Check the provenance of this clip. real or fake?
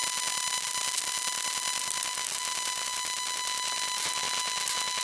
real